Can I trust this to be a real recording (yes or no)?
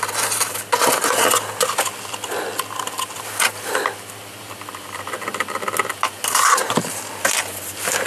yes